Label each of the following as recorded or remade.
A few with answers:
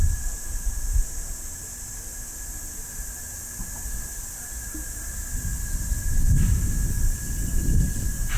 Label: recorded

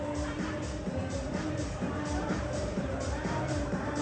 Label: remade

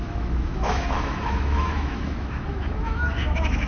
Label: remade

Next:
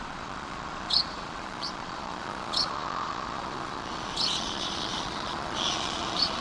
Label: remade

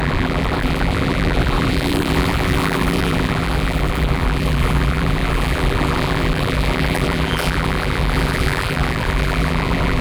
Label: remade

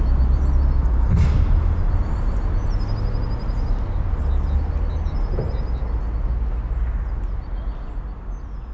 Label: recorded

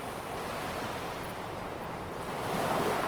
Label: recorded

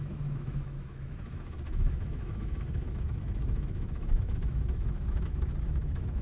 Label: remade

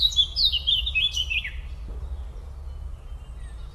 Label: recorded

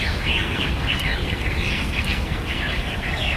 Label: remade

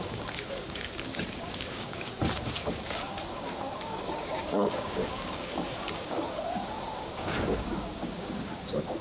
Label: remade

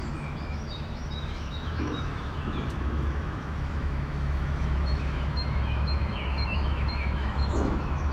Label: remade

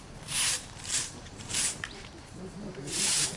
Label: remade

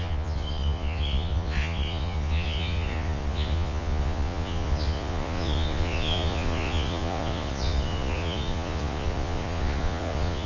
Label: remade